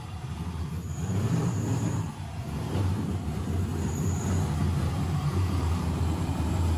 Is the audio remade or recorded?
remade